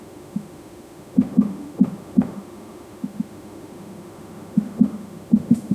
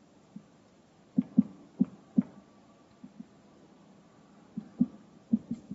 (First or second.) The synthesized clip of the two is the first